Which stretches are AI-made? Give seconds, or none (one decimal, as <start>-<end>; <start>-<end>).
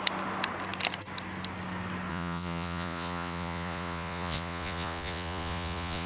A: 2.1-6.1